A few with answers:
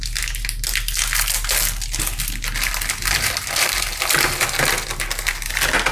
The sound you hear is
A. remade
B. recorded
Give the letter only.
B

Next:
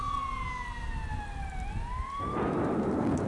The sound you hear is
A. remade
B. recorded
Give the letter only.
B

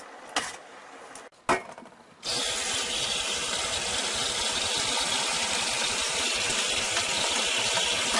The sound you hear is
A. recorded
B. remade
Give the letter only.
A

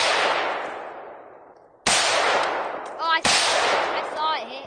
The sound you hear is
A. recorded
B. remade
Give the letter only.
A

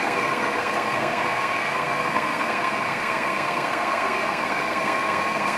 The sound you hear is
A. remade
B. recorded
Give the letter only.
A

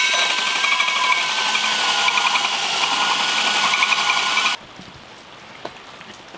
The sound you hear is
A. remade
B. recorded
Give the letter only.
B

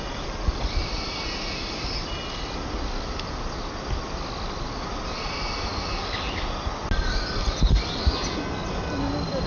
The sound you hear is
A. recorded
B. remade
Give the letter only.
A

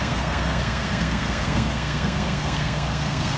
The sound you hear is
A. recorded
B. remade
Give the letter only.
B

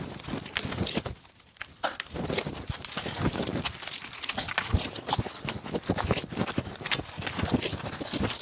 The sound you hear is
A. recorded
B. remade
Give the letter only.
A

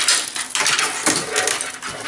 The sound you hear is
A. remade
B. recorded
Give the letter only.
B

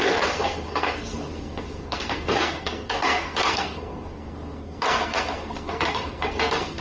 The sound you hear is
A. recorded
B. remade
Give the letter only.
B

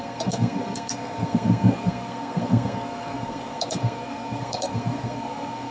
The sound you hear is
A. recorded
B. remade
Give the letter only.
B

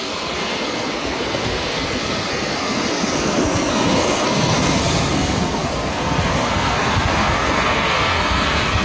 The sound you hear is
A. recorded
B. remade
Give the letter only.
B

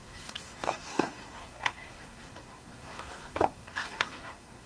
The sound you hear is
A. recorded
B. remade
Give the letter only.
B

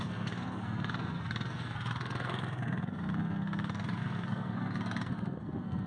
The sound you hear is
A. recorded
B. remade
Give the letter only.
B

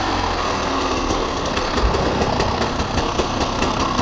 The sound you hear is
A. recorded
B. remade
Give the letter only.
B